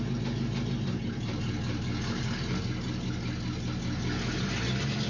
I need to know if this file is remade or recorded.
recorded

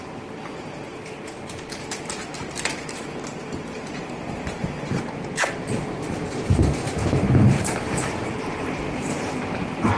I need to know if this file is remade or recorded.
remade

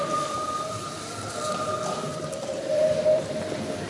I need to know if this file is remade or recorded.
remade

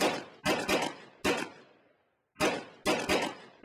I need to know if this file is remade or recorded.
recorded